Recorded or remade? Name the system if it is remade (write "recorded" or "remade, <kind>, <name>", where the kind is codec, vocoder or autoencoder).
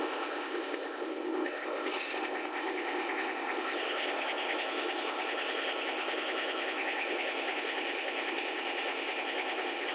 remade, codec, ZipCodec